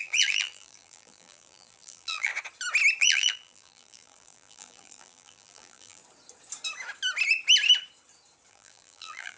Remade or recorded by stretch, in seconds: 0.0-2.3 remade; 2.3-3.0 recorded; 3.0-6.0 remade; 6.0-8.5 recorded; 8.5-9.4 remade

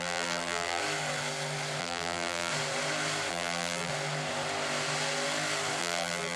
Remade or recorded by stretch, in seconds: 0.0-0.8 remade; 0.8-1.8 recorded; 1.8-2.5 remade; 2.5-3.3 recorded; 3.3-3.9 remade; 3.9-5.8 recorded; 5.8-6.4 remade

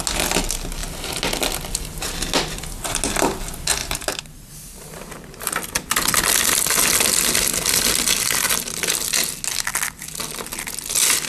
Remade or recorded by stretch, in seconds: 0.0-3.8 recorded; 3.8-5.5 remade; 5.5-11.3 recorded

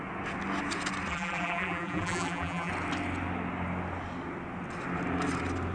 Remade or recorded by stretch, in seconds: 0.0-1.1 recorded; 1.1-2.7 remade; 2.7-5.7 recorded

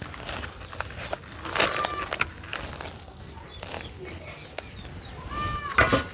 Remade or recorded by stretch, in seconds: 0.0-6.1 recorded

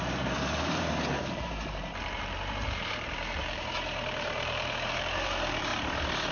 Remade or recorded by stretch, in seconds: 0.0-5.7 remade; 5.7-6.3 recorded